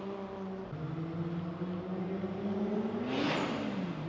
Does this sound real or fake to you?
real